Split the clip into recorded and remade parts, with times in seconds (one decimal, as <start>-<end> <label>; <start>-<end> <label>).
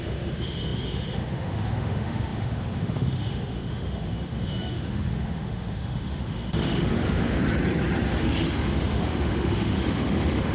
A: 0.0-7.4 remade; 7.4-8.2 recorded; 8.2-10.5 remade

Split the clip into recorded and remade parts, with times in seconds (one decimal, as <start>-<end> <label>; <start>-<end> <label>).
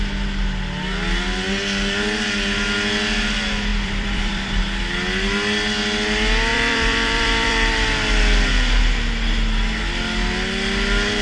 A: 0.0-3.7 recorded; 3.7-4.6 remade; 4.6-6.5 recorded; 6.5-7.7 remade; 7.7-11.2 recorded